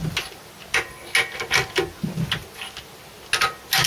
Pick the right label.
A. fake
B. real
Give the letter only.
B